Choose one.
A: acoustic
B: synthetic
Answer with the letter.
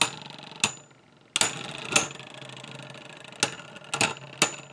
A